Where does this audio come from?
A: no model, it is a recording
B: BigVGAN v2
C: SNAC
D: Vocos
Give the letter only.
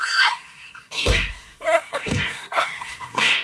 C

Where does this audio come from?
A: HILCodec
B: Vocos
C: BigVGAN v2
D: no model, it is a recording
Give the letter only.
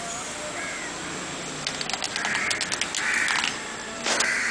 D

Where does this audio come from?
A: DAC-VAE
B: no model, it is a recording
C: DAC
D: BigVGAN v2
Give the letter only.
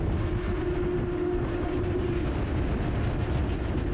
B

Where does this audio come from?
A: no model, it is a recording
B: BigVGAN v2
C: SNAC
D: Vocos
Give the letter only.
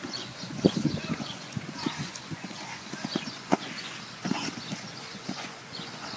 D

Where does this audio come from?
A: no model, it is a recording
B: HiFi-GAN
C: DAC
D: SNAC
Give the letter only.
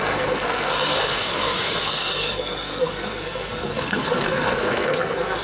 D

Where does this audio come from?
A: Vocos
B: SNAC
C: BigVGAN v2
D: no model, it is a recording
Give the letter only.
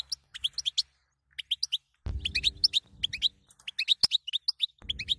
D